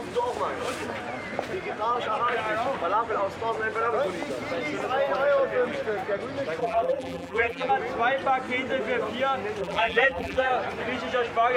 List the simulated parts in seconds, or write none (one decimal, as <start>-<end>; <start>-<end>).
6.6-7.7; 9.6-10.5